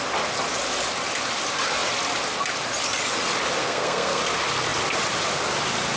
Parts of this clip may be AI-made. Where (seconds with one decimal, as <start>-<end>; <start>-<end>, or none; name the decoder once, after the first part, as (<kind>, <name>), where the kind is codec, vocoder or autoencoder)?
3.6-4.2 (codec, SNAC)